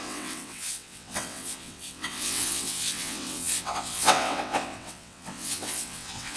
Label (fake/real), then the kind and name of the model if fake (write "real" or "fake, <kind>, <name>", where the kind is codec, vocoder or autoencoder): fake, vocoder, WaveNeXt